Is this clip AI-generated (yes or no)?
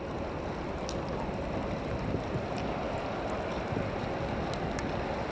no